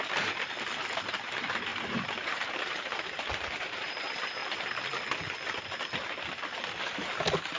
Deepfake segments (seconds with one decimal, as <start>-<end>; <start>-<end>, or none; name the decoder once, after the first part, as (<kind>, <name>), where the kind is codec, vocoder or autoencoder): 1.7-3.9 (vocoder, BigVGAN v2)